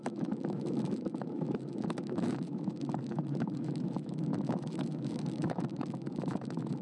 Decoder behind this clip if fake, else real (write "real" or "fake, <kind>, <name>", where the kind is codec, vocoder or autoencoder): fake, autoencoder, DAC-VAE